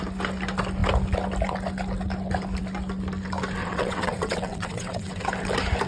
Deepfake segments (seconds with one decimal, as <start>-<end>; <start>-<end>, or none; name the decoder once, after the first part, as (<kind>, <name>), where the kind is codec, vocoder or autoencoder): 3.6-5.3 (vocoder, WaveNeXt)